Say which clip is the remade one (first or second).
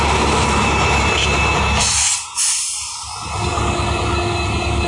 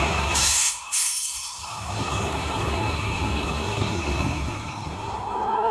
second